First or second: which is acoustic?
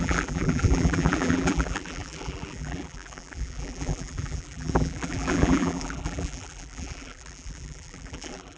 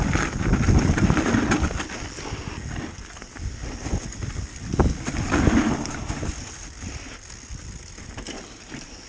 second